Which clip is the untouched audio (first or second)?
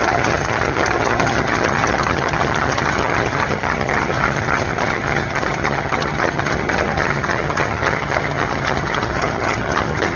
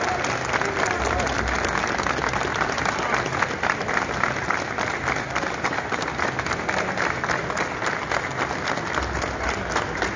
second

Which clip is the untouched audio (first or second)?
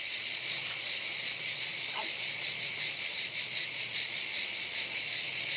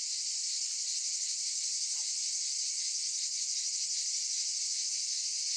second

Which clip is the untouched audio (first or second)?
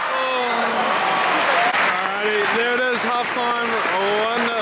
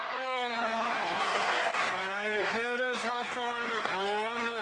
first